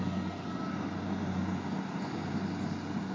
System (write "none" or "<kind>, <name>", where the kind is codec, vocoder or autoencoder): none